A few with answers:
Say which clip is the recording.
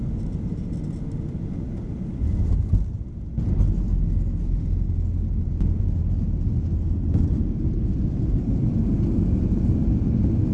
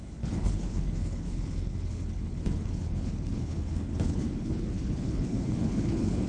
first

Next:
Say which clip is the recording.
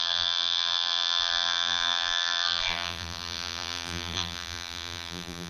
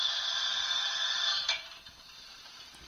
second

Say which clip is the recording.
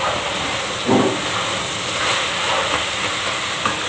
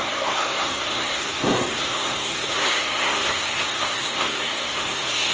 first